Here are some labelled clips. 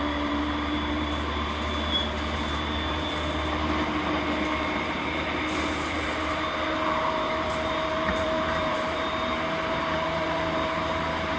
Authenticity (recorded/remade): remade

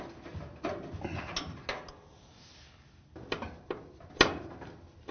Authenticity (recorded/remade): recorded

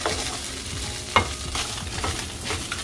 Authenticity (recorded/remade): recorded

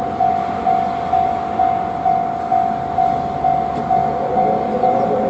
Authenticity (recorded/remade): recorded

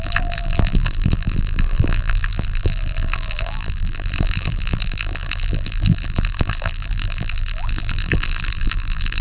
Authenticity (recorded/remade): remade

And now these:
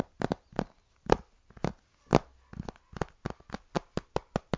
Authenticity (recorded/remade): recorded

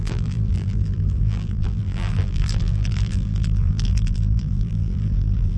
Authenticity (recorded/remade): remade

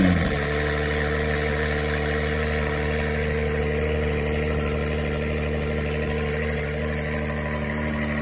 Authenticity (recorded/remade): recorded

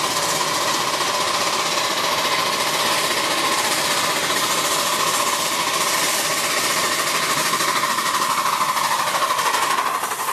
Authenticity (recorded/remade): remade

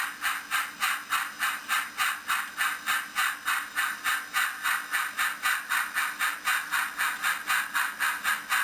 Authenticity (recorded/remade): recorded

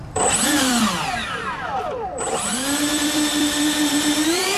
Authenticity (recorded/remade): remade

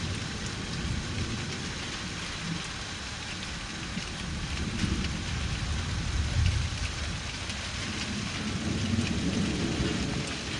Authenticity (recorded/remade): recorded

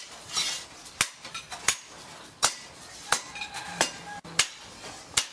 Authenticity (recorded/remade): recorded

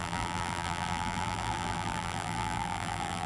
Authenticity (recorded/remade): remade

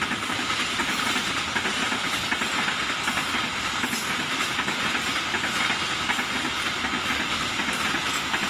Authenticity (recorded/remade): recorded